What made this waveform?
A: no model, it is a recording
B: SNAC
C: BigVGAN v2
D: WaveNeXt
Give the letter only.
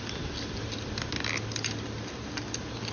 A